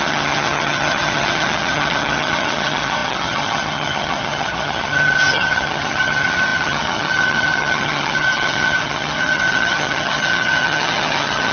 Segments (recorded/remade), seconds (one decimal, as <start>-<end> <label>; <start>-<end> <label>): 0.0-11.5 remade